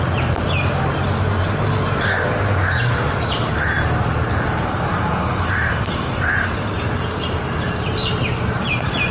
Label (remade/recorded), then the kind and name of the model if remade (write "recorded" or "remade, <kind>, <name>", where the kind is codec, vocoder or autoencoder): remade, vocoder, BigVGAN v2